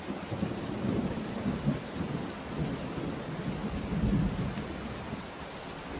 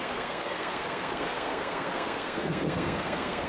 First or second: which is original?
first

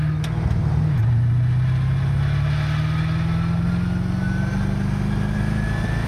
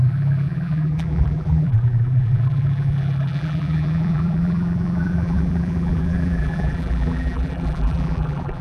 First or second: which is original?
first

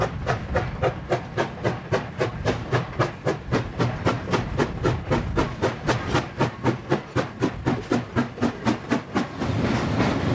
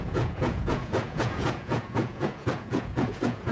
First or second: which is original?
first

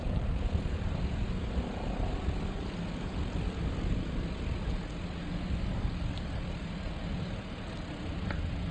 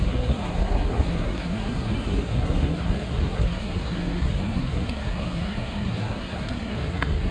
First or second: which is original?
first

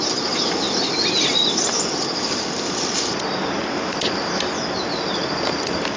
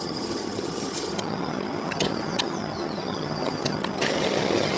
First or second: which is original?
first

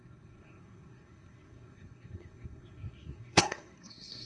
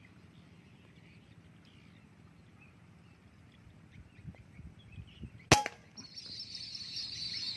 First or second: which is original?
second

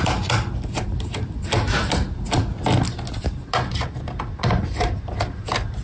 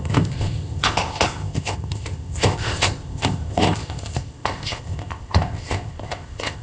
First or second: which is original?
first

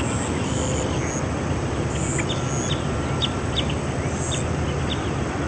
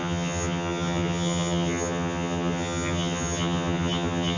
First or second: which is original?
first